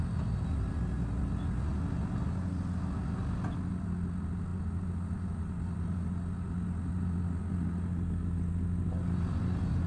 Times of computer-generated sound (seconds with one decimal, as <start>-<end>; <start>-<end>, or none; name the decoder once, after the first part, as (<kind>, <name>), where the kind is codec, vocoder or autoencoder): none